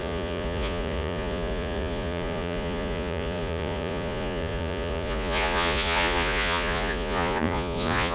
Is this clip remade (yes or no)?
yes